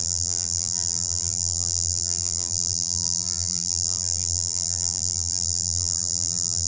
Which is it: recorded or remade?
remade